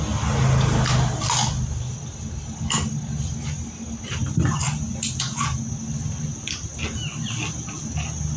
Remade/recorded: recorded